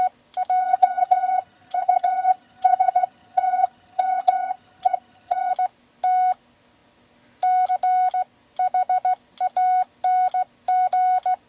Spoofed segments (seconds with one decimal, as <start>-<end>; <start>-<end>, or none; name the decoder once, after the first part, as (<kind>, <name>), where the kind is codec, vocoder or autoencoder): 0.6-5.5 (vocoder, HiFi-GAN)